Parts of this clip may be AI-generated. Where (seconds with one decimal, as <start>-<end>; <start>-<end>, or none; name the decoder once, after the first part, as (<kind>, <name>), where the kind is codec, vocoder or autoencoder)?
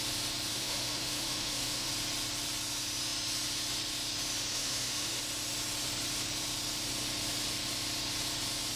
0.5-1.9 (autoencoder, DAC-VAE); 4.5-5.2